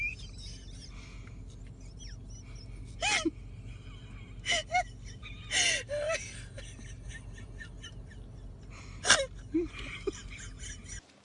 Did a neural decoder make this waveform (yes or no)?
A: no